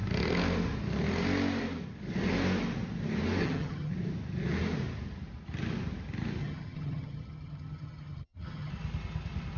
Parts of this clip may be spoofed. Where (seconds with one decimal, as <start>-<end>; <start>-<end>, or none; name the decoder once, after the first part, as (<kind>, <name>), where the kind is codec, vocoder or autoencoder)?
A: 3.4-3.9 (vocoder, HiFi-GAN); 6.4-8.7